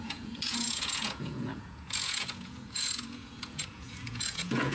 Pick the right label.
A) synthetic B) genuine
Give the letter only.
A